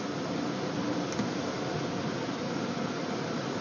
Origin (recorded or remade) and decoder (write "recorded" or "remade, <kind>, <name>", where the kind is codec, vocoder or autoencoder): remade, vocoder, BigVGAN v2